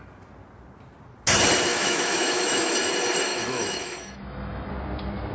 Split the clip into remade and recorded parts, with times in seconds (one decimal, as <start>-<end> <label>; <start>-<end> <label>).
0.0-1.7 recorded; 1.7-2.7 remade; 2.7-3.3 recorded; 3.3-4.7 remade; 4.7-5.3 recorded